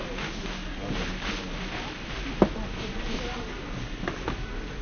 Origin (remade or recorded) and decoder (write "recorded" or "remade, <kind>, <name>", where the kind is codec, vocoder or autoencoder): recorded